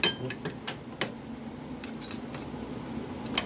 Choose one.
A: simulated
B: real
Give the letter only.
B